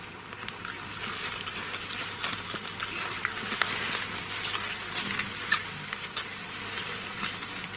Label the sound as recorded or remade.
recorded